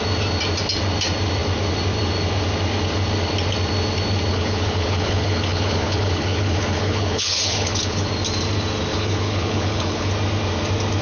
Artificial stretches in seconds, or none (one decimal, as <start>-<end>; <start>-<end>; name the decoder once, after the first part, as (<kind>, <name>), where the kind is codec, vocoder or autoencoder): 4.3-8.1 (codec, HILCodec); 8.9-10.1